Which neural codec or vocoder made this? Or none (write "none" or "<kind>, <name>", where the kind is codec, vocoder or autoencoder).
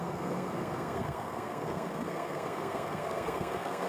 codec, SNAC